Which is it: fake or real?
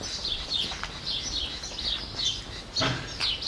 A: real